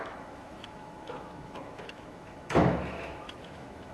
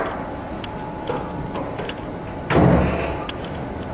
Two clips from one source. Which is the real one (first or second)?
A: second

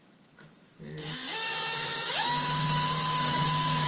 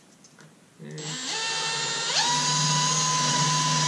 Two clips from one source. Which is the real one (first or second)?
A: second